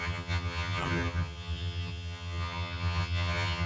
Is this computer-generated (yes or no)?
yes